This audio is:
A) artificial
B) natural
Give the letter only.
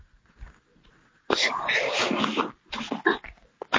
B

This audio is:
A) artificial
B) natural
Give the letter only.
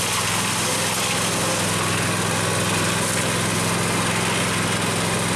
B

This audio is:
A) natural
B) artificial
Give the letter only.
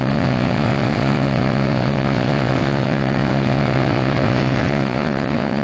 B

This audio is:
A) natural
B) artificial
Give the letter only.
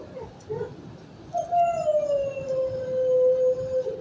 A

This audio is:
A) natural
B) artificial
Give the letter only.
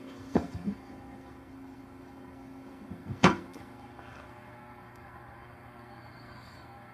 B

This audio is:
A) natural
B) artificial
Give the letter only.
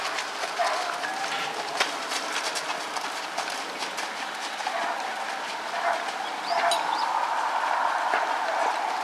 A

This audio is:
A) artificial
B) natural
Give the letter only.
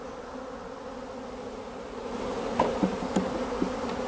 B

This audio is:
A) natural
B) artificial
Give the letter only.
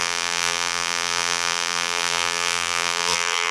B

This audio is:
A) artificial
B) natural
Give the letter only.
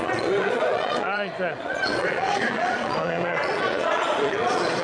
A